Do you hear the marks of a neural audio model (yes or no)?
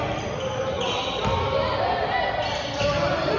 no